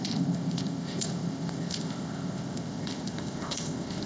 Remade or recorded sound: remade